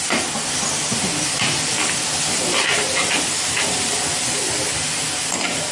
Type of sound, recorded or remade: recorded